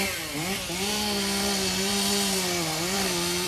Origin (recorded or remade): remade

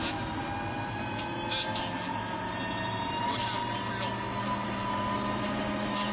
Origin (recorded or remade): recorded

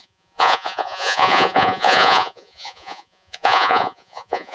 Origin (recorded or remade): remade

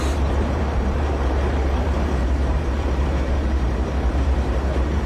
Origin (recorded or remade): remade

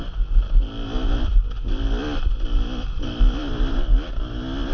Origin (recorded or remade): recorded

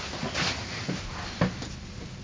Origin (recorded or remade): recorded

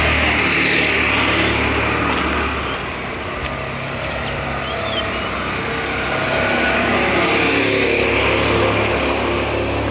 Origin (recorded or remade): recorded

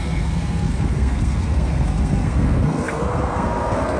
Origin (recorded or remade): remade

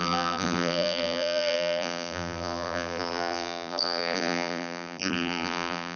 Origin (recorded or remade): remade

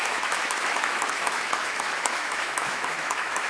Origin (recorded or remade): remade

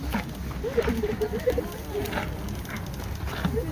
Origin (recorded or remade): recorded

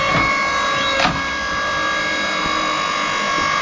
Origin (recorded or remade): recorded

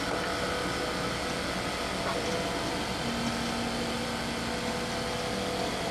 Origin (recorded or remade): recorded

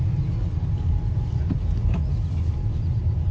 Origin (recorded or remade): recorded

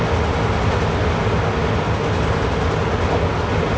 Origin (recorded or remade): recorded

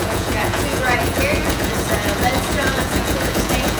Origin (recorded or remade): remade